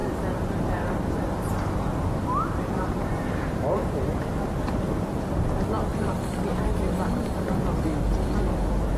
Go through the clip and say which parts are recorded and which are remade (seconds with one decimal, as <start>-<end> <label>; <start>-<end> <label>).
0.0-5.3 remade; 5.3-5.9 recorded; 5.9-9.0 remade